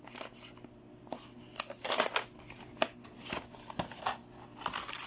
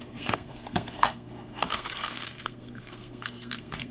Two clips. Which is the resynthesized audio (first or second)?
second